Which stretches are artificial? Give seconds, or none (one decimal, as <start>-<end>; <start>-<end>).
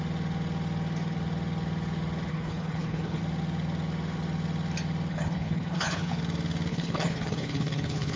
2.3-3.2; 5.1-6.2; 6.7-8.2